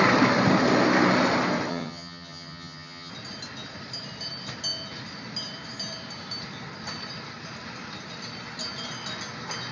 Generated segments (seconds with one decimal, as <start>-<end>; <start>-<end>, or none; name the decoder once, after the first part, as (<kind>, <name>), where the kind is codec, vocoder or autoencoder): 1.7-3.1 (vocoder, HiFi-GAN)